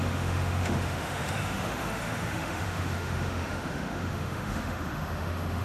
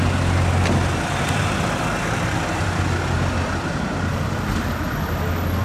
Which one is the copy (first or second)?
first